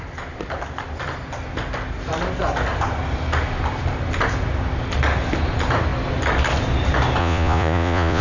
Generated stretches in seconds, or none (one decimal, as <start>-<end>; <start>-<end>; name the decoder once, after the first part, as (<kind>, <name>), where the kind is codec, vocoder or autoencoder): 7.2-8.2 (vocoder, Vocos)